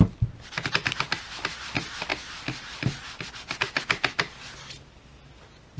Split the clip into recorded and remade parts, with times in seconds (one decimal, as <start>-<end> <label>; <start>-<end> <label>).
0.0-5.8 recorded